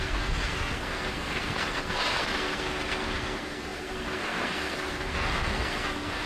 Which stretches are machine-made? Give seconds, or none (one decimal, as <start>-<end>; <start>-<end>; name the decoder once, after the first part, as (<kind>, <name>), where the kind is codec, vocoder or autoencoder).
0.0-6.3 (codec, SNAC)

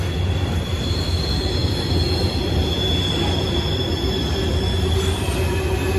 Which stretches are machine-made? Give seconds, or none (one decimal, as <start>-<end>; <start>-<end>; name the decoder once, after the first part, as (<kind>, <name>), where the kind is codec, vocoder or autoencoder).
none

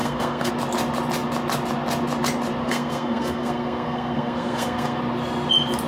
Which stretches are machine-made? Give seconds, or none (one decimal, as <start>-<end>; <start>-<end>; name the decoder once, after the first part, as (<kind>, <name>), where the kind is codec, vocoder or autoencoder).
0.0-0.5 (codec, SNAC); 2.6-5.0

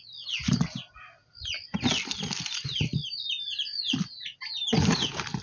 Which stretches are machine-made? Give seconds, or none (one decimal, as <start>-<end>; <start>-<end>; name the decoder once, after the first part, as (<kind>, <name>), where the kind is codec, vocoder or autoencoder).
none

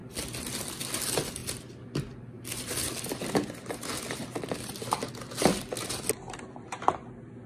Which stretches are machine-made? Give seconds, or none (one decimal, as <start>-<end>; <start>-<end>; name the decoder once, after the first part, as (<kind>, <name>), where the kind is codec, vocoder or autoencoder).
none